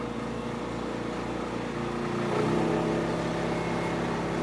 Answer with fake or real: real